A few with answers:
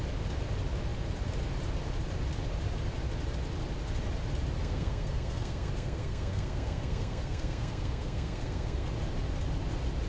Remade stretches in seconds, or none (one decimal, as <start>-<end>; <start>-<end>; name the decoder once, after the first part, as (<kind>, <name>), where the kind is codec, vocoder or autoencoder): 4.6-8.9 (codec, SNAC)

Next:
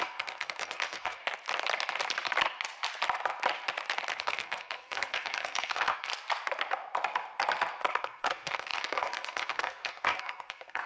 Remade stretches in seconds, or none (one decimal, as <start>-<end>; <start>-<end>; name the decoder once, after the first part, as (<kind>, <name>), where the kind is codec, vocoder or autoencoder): 0.0-1.2 (codec, SNAC); 4.2-6.1; 8.0-10.9

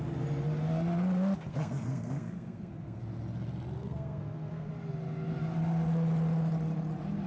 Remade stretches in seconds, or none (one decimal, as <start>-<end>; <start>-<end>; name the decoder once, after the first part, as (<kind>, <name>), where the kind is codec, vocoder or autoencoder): 1.5-3.0 (codec, SNAC); 3.8-4.7

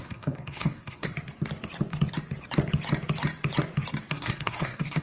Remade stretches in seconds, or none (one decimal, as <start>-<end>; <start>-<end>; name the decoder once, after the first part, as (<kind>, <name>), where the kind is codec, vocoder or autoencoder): 0.0-1.1 (codec, SNAC); 4.1-5.0

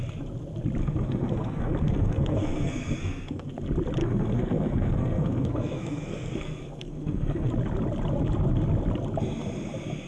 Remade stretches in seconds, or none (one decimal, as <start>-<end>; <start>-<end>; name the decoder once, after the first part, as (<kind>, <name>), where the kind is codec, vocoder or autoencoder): 0.8-3.5 (codec, SNAC); 4.0-7.5

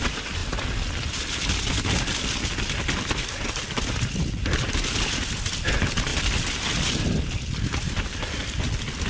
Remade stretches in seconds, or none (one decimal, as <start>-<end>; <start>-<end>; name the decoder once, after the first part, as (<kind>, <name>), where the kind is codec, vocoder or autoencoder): none